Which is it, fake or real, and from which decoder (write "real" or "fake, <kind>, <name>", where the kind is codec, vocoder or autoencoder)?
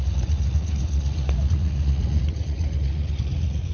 fake, vocoder, Vocos